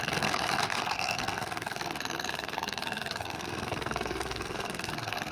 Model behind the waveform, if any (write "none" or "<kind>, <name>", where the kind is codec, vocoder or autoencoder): codec, SNAC